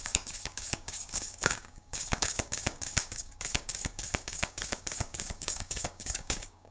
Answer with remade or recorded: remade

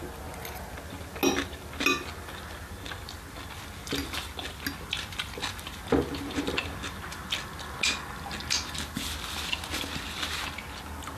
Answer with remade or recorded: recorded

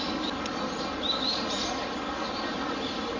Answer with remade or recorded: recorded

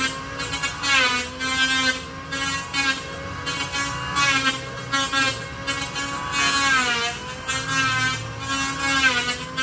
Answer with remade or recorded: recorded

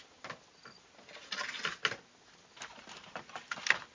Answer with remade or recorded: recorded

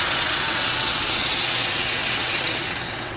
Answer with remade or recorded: remade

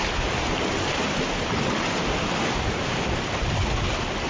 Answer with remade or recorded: recorded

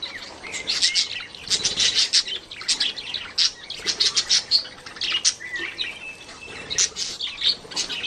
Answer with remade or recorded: recorded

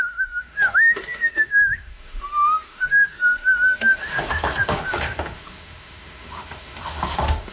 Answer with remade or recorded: remade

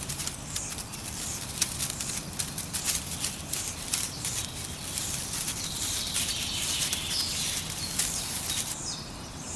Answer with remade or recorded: remade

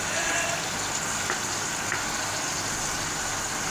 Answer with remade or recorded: recorded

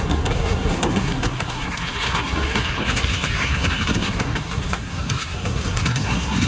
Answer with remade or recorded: remade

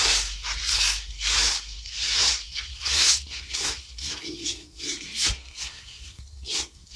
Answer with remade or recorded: remade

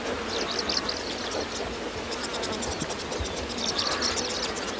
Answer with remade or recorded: recorded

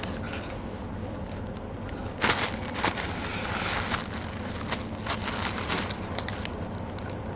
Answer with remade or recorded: recorded